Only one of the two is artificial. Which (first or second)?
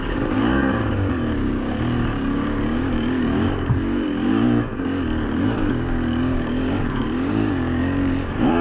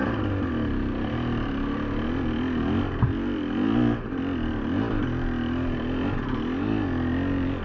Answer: first